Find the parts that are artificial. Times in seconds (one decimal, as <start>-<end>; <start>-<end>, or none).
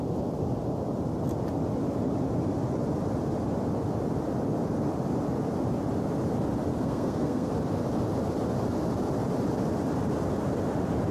6.7-7.5